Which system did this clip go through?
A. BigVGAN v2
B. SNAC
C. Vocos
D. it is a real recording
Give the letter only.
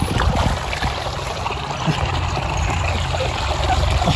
A